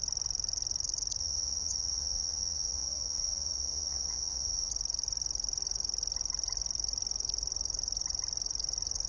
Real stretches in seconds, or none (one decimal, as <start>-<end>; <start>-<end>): 0.0-1.2; 4.7-9.1